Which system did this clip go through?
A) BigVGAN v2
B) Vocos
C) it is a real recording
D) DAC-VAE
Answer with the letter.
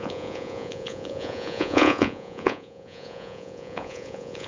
B